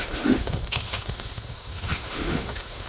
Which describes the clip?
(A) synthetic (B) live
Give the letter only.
A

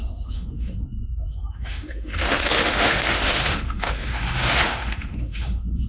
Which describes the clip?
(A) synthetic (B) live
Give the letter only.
A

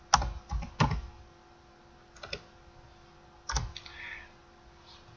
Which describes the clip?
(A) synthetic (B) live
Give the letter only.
B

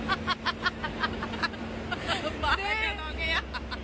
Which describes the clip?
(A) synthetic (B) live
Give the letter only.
B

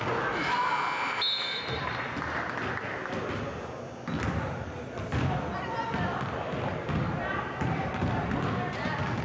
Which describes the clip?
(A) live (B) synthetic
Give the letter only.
A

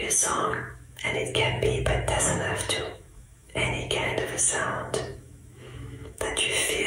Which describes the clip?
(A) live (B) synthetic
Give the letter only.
B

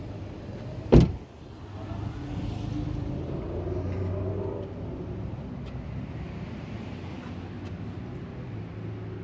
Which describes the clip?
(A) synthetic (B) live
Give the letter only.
B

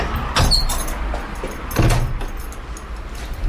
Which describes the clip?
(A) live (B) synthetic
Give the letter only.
A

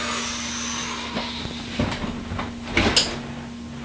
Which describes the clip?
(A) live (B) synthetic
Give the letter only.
A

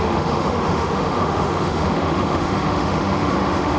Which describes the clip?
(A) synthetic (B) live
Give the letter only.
A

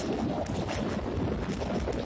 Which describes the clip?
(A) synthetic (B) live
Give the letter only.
B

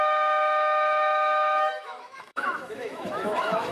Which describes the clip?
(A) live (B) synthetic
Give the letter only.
B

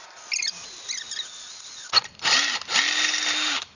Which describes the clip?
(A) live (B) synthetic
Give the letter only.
A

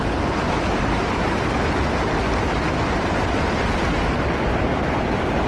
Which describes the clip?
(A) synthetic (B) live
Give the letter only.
B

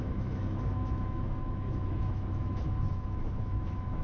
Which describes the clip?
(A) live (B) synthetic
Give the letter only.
B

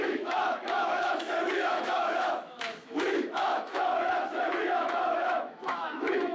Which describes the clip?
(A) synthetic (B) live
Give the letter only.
A